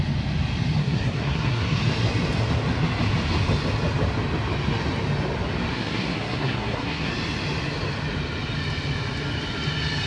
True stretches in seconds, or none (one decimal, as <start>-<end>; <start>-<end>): 0.0-0.8; 1.8-5.7; 7.1-10.1

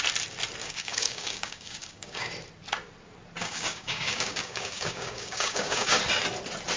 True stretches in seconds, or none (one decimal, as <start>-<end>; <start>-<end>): 0.0-0.6; 2.3-3.4; 6.0-6.8

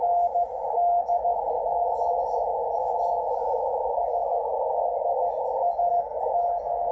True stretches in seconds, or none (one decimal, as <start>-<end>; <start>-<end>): 0.0-6.9

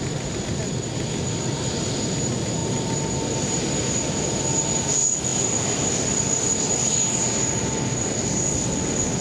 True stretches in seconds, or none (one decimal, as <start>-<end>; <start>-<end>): 0.0-9.2